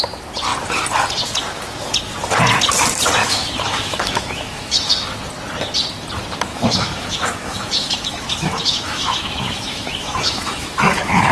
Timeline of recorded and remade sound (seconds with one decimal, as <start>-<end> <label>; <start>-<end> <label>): 0.0-3.2 recorded; 3.2-4.9 remade; 4.9-6.5 recorded; 6.5-11.3 remade